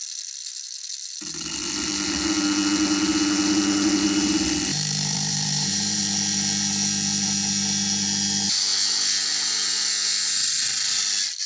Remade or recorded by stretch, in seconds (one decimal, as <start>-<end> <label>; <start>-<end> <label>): 0.0-4.7 recorded; 4.7-6.0 remade; 6.0-11.5 recorded